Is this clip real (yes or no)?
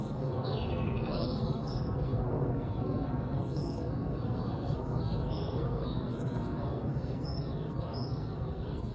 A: no